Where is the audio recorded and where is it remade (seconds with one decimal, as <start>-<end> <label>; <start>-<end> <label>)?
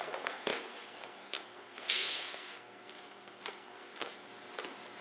0.0-4.3 remade; 4.3-5.0 recorded